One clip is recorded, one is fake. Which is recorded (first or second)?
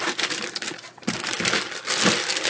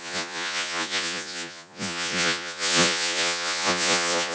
first